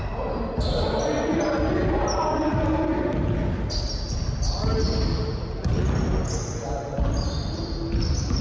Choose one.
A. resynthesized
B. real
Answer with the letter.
B